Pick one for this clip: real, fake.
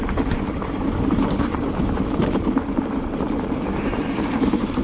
fake